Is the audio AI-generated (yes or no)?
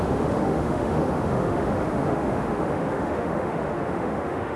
yes